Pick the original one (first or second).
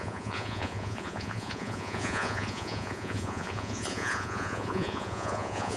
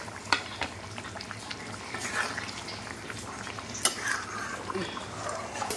second